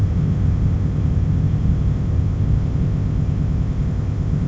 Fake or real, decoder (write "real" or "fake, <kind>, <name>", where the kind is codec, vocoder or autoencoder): fake, codec, ZipCodec